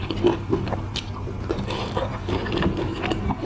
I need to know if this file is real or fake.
real